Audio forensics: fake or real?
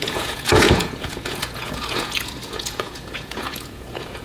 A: fake